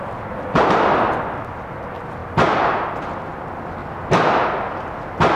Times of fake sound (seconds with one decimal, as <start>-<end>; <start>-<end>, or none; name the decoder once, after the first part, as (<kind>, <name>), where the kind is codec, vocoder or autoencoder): none